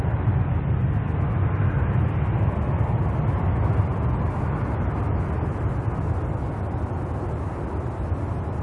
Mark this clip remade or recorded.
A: recorded